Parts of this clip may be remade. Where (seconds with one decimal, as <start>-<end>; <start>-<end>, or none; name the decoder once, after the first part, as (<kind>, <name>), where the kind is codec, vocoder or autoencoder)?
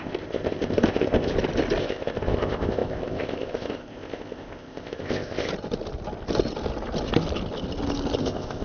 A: 0.0-1.3 (codec, ZipCodec); 1.8-5.5; 8.2-8.6